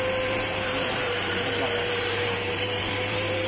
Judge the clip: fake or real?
fake